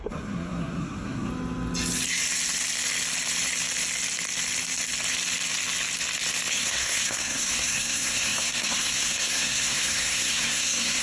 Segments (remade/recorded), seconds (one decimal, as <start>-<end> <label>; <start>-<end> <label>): 0.0-1.3 remade; 1.3-6.5 recorded; 6.5-11.0 remade